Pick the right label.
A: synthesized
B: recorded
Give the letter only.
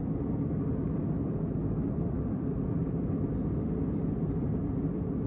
B